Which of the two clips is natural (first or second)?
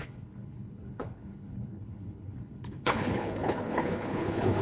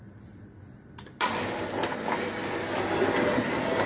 second